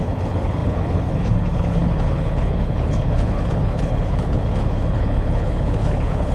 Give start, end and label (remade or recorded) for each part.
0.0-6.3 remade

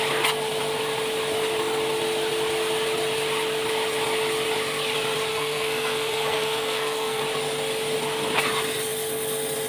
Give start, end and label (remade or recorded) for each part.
0.0-5.3 recorded; 5.3-7.2 remade; 7.2-9.7 recorded

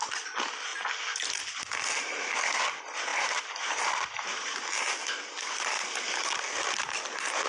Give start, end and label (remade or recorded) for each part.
0.0-3.1 recorded; 3.1-4.5 remade; 4.5-7.5 recorded

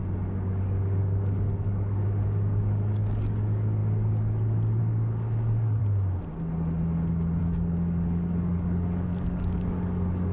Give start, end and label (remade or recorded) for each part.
0.0-0.5 recorded; 0.5-5.8 remade; 5.8-7.4 recorded; 7.4-10.3 remade

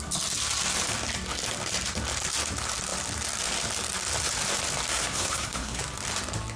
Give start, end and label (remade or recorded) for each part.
0.0-4.9 recorded; 4.9-5.8 remade; 5.8-6.6 recorded

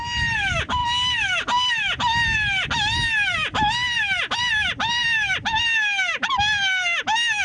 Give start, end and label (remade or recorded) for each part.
0.0-7.4 recorded